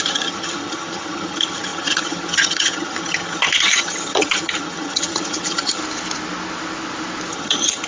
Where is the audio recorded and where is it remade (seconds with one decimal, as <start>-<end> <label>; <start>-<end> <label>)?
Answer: 0.0-5.8 remade; 5.8-7.3 recorded; 7.3-7.9 remade